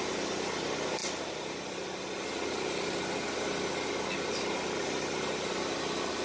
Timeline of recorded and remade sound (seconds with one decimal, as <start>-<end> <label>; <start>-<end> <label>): 0.0-6.2 recorded

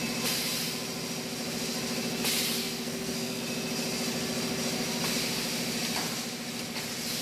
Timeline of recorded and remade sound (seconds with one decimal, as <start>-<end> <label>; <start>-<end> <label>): 0.0-2.6 recorded; 2.6-3.4 remade; 3.4-7.2 recorded

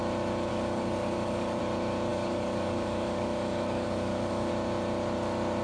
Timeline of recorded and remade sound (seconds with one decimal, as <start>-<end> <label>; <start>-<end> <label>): 0.0-0.5 recorded; 0.5-1.6 remade; 1.6-2.1 recorded; 2.1-4.5 remade; 4.5-5.6 recorded

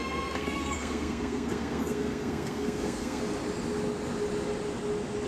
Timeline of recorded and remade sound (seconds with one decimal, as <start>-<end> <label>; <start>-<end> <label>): 0.0-3.2 remade; 3.2-5.3 recorded

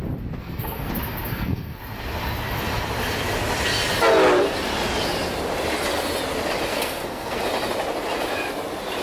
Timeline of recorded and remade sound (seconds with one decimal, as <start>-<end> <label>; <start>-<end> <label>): 0.0-0.4 recorded; 0.4-0.9 remade; 0.9-1.3 recorded; 1.3-1.8 remade; 1.8-6.7 recorded; 6.7-7.4 remade; 7.4-9.0 recorded

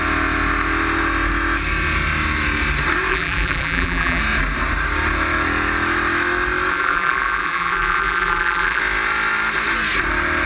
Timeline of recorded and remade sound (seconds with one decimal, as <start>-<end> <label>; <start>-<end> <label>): 0.0-3.1 recorded; 3.1-4.2 remade; 4.2-6.7 recorded; 6.7-8.8 remade; 8.8-10.5 recorded

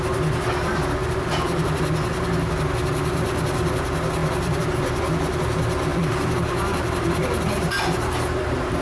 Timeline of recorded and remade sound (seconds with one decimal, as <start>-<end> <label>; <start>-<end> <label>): 0.0-1.0 recorded; 1.0-1.8 remade; 1.8-4.2 recorded; 4.2-4.8 remade; 4.8-5.9 recorded; 5.9-6.4 remade; 6.4-8.8 recorded